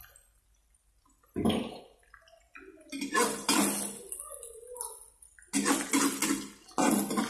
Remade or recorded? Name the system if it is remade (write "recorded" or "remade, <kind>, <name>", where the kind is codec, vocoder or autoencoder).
recorded